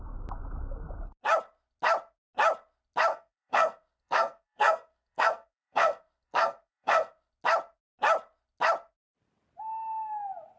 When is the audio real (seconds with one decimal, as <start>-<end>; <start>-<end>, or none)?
0.0-3.1; 7.3-10.6